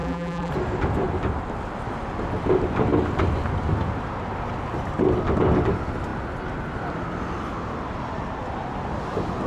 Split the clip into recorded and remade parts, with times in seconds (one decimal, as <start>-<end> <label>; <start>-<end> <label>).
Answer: 0.0-0.5 remade; 0.5-9.5 recorded